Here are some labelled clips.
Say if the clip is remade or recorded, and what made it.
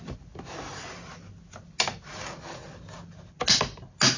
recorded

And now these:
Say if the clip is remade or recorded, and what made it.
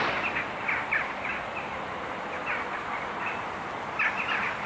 recorded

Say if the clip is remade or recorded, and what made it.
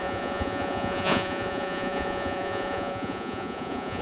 remade, vocoder, Vocos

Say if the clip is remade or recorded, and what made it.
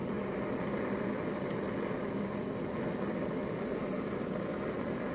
recorded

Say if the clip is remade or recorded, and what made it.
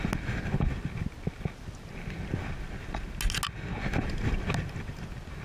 recorded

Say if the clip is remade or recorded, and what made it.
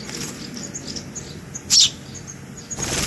recorded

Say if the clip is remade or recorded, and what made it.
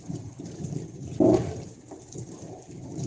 remade, vocoder, BigVGAN v2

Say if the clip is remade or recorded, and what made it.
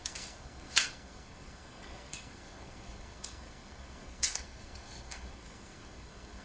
remade, codec, SNAC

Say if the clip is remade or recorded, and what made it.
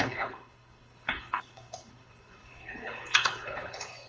remade, codec, HILCodec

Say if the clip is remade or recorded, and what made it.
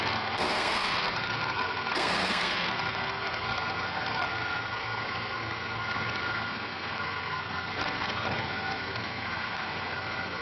remade, codec, SNAC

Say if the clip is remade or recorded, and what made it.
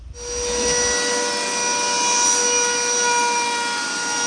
recorded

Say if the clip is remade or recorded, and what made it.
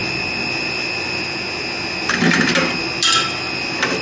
recorded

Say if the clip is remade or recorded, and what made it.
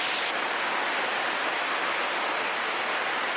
recorded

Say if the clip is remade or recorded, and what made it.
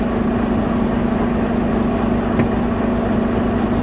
recorded